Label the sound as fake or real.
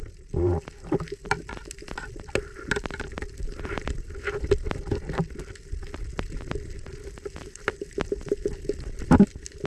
real